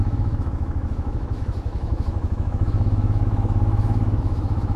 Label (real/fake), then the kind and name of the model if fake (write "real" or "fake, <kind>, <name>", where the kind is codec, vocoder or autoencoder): fake, autoencoder, DAC-VAE